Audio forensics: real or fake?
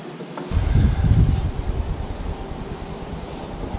real